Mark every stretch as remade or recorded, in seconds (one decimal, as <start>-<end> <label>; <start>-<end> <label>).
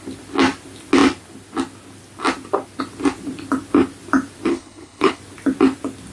0.0-4.5 recorded; 4.5-5.2 remade; 5.2-6.1 recorded